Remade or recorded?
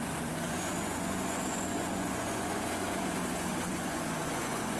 remade